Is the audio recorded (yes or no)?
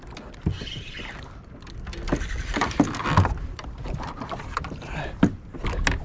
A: yes